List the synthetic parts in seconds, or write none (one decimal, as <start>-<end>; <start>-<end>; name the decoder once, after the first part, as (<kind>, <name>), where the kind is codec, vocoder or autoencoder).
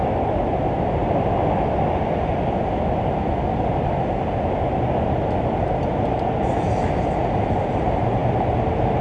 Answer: 1.0-2.9 (vocoder, BigVGAN v2); 8.2-9.0